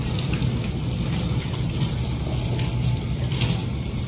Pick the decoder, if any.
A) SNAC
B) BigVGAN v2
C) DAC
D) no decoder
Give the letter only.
D